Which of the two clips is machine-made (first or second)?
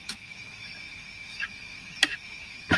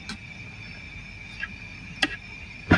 first